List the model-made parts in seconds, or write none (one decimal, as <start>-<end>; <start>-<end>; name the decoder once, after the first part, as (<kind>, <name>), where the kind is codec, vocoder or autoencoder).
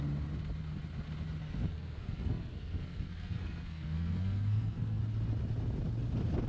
1.4-5.0 (codec, SNAC)